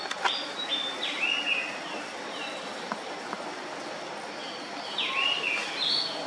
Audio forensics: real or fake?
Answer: real